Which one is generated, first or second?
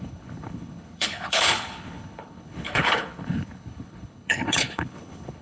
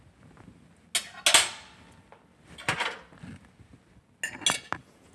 first